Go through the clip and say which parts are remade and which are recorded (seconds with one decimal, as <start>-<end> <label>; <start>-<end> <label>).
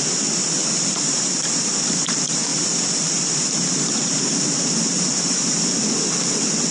0.0-6.7 recorded